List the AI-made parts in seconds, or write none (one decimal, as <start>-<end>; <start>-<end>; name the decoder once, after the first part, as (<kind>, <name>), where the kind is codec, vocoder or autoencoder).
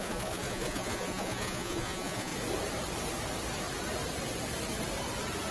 0.0-2.3 (vocoder, Vocos)